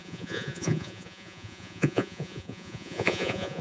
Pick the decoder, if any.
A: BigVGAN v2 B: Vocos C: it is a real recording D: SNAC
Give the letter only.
B